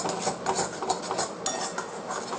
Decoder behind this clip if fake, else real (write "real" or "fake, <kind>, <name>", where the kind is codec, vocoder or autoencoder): real